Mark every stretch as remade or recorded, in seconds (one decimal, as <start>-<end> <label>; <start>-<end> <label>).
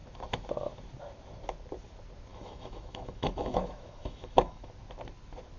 0.0-2.3 recorded; 2.3-4.7 remade; 4.7-5.6 recorded